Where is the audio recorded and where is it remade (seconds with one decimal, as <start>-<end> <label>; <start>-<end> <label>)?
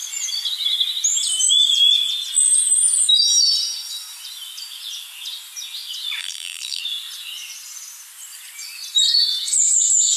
0.0-6.2 recorded; 6.2-6.8 remade; 6.8-10.2 recorded